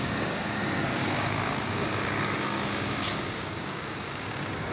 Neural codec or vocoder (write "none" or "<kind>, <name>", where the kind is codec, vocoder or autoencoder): codec, DAC